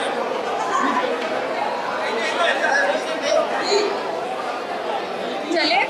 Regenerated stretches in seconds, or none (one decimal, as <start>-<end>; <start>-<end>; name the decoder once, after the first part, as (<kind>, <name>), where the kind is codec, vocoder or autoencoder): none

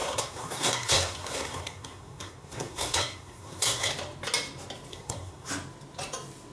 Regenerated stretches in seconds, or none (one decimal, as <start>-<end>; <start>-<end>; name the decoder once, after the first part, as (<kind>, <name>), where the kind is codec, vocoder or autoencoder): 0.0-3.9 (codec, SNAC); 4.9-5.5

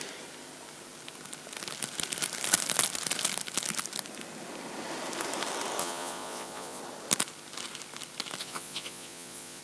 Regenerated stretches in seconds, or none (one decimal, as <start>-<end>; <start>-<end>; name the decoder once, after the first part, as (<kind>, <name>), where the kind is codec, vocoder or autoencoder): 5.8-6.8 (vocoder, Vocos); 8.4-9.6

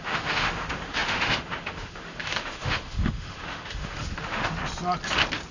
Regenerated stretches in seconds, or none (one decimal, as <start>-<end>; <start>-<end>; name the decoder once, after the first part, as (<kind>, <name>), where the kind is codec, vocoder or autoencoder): 0.0-4.6 (autoencoder, DAC-VAE)